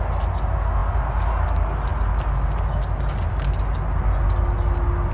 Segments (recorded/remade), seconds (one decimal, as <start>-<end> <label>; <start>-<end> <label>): 0.0-5.1 recorded